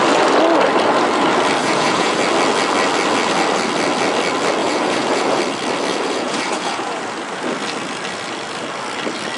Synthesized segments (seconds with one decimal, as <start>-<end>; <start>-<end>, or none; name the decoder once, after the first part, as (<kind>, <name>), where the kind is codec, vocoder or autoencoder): 1.6-2.2 (vocoder, Vocos); 4.6-5.4; 5.9-7.0